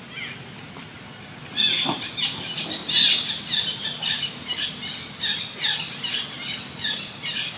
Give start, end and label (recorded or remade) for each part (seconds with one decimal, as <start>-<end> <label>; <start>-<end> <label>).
0.0-7.6 recorded